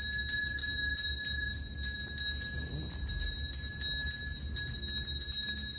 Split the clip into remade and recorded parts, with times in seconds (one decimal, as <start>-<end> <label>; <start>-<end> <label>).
0.0-5.8 recorded